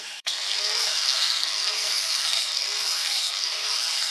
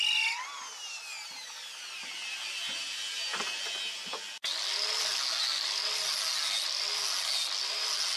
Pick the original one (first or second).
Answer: second